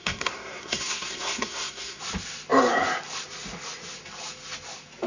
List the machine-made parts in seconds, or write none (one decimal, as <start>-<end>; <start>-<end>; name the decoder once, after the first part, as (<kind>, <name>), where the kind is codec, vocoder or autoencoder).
0.0-2.0 (codec, SNAC)